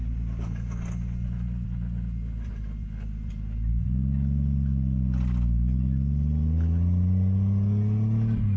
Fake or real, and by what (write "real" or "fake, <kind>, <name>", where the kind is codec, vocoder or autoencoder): real